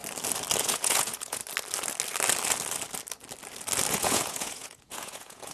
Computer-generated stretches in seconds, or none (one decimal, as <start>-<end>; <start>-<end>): 0.6-1.4; 3.9-5.5